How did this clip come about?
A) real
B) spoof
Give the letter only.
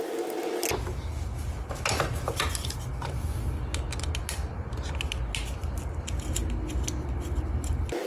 A